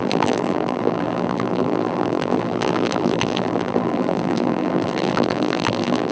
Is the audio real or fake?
fake